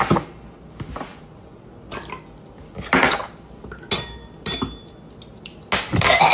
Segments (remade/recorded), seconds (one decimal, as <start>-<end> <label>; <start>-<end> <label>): 0.0-6.3 recorded